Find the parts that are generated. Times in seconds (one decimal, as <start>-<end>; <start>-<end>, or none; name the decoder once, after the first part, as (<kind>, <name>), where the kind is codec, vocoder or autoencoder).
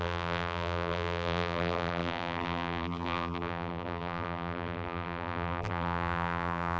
0.0-6.8 (vocoder, BigVGAN v2)